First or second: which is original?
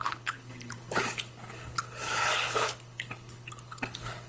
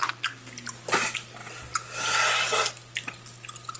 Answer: second